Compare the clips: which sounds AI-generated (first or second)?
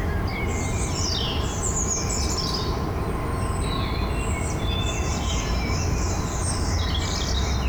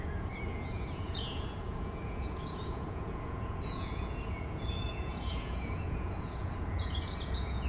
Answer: second